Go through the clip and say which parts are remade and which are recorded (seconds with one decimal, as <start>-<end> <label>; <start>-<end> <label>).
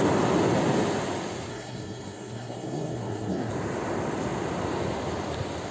0.0-1.5 recorded; 1.5-3.5 remade; 3.5-5.7 recorded